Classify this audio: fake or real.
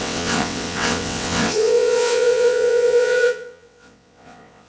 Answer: fake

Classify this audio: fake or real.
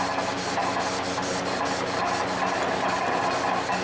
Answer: real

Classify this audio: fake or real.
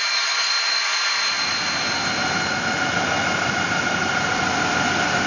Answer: real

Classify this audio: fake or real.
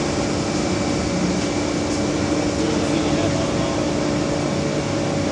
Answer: real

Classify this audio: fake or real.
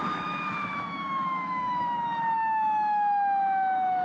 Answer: fake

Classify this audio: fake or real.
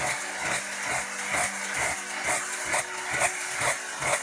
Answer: real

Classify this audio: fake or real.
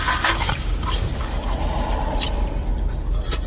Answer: real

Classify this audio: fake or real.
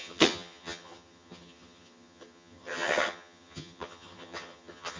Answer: fake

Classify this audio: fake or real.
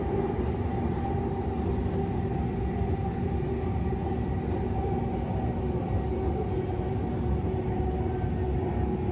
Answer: real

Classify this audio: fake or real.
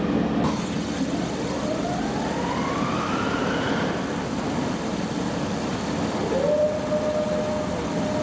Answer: real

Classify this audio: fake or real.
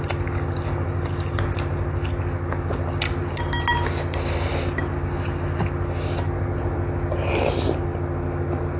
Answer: real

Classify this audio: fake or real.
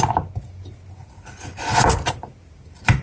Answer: real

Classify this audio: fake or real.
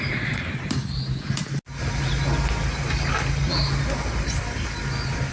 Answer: real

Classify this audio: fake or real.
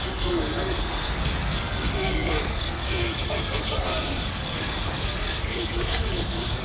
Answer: fake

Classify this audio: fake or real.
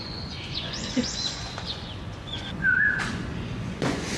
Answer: fake